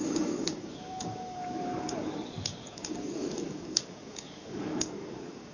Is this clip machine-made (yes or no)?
yes